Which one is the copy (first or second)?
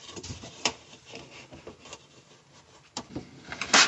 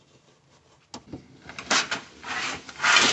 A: first